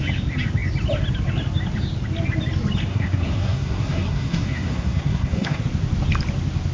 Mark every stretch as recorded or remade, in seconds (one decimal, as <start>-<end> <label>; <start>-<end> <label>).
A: 0.0-2.9 recorded; 2.9-5.6 remade; 5.6-6.7 recorded